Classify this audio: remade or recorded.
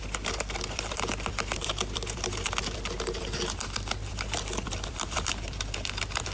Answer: remade